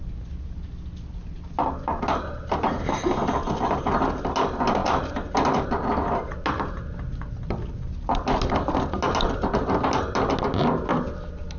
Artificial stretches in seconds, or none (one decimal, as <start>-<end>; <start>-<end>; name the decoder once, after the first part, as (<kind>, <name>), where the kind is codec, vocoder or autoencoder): none